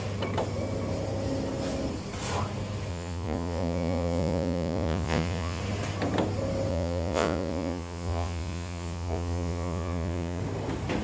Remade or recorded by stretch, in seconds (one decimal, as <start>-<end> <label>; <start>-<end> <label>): 0.0-2.9 recorded; 2.9-5.6 remade; 5.6-6.7 recorded; 6.7-10.4 remade; 10.4-11.0 recorded